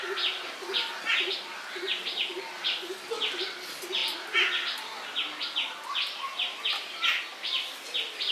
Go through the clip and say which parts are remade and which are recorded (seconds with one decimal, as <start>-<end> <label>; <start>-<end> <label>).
0.0-8.3 recorded